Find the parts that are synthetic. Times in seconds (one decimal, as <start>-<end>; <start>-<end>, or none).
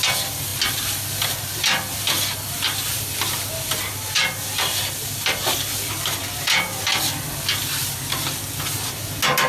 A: none